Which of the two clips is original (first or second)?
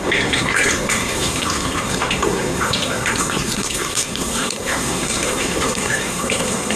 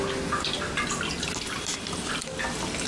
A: second